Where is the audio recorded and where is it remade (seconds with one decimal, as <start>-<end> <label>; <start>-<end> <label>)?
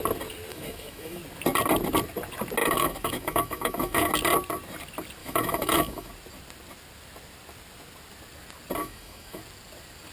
0.0-0.5 recorded; 0.5-1.2 remade; 1.2-2.6 recorded; 2.6-4.1 remade; 4.1-5.2 recorded; 5.2-6.1 remade; 6.1-8.8 recorded; 8.8-9.4 remade; 9.4-10.1 recorded